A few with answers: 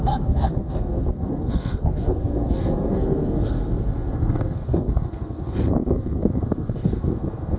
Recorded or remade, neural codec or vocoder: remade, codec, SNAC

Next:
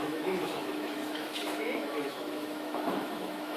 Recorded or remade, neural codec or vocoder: remade, autoencoder, DAC-VAE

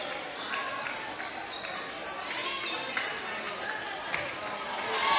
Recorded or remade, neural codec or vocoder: recorded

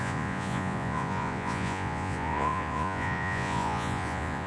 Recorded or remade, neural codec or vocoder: remade, vocoder, Vocos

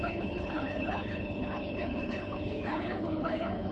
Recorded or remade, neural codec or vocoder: remade, codec, HILCodec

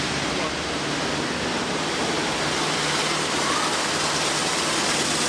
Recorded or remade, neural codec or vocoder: recorded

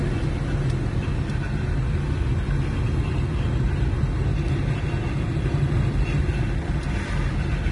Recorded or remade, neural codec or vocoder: recorded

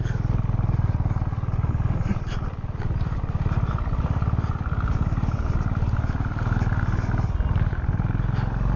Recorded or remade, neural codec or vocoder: recorded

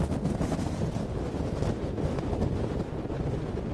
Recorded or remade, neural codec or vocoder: recorded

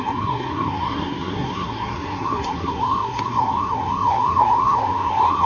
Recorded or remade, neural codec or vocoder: remade, codec, SNAC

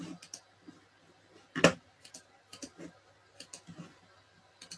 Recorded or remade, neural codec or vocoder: recorded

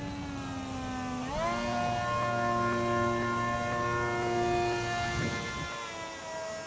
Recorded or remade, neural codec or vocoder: recorded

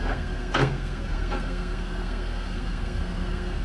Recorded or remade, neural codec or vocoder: remade, codec, SNAC